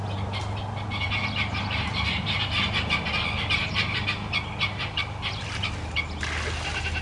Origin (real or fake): real